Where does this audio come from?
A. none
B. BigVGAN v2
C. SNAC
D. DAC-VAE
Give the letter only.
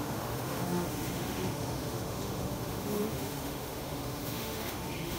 D